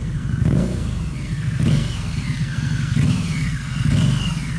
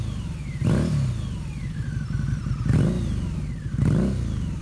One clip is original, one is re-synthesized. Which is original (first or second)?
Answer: second